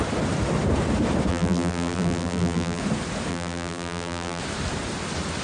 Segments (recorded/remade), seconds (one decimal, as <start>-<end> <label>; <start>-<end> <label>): 0.0-1.3 recorded; 1.3-2.8 remade; 2.8-3.3 recorded; 3.3-4.4 remade; 4.4-5.4 recorded